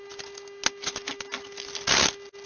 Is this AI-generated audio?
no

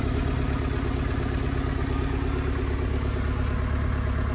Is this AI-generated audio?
no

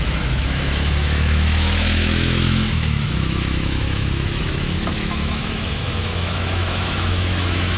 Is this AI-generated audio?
yes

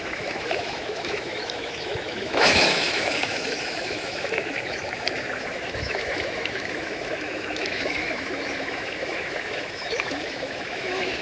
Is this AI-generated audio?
yes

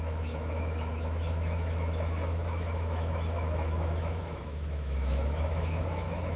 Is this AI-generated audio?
yes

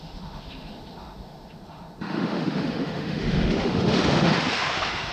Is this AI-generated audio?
yes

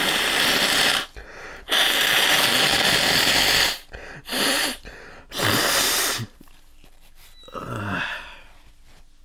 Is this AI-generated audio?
no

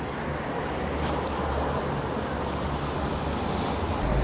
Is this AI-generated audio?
no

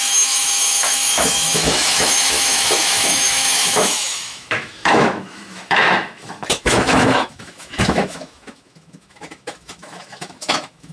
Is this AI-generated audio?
yes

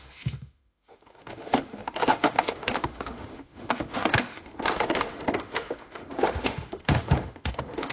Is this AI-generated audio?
yes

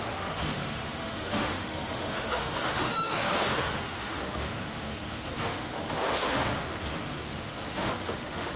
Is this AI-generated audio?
yes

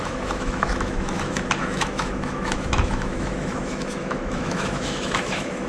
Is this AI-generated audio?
yes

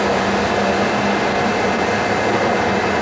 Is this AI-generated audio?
no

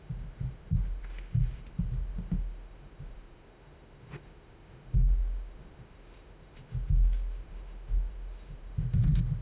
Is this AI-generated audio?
yes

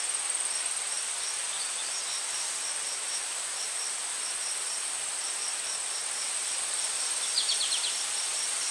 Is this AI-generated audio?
no